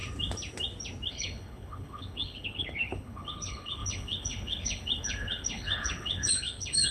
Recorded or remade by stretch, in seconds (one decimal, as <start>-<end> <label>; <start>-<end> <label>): 0.0-1.1 recorded; 1.1-6.9 remade